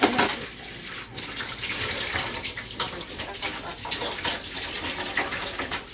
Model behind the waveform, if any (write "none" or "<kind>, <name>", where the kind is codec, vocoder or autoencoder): none